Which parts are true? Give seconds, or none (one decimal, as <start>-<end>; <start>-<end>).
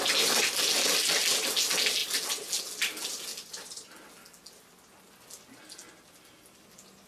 0.0-3.3; 4.0-7.1